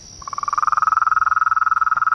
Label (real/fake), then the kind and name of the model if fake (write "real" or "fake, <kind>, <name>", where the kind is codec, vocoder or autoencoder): real